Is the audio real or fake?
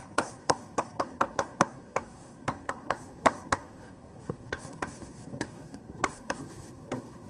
fake